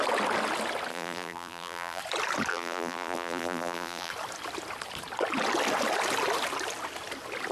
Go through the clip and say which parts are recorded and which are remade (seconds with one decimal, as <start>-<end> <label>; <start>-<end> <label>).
0.0-0.9 recorded; 0.9-2.0 remade; 2.0-2.5 recorded; 2.5-4.1 remade; 4.1-7.5 recorded